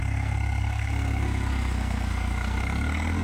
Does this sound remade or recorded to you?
remade